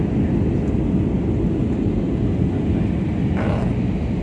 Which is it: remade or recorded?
recorded